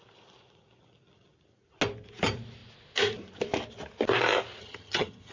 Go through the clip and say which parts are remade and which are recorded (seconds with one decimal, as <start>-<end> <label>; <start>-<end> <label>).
0.0-4.6 recorded; 4.6-5.3 remade